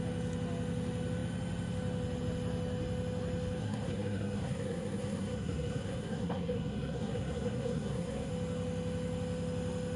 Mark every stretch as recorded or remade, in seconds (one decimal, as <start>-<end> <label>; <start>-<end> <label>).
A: 0.0-3.6 recorded; 3.6-8.3 remade; 8.3-10.0 recorded